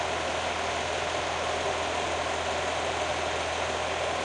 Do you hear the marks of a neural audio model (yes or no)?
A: no